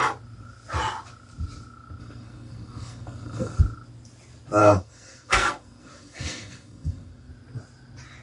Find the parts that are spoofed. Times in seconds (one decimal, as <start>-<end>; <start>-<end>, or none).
2.0-3.6; 4.6-7.3